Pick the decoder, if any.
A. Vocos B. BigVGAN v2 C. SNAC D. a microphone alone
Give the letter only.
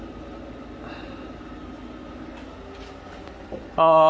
D